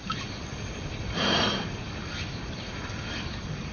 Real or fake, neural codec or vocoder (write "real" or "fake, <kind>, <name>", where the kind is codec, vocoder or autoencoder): real